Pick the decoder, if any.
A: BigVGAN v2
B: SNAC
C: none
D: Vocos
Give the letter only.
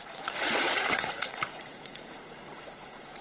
D